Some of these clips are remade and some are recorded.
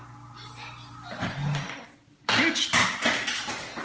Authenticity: recorded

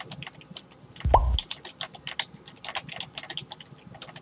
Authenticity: recorded